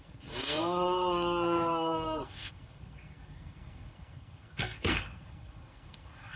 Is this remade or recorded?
remade